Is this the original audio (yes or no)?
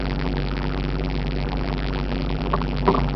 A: no